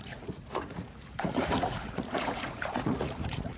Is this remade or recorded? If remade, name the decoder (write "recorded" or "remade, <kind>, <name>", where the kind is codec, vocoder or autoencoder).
remade, vocoder, Vocos